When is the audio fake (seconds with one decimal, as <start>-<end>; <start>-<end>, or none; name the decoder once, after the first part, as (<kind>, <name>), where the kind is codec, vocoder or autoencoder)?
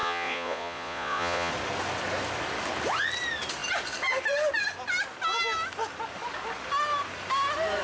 0.0-1.5 (vocoder, Vocos)